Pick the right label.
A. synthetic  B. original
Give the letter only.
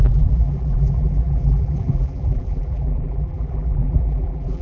A